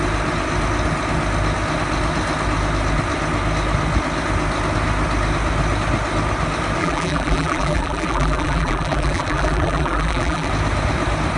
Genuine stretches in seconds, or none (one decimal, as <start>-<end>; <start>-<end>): 0.0-6.8; 10.5-11.4